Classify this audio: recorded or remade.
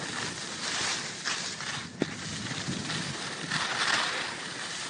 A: recorded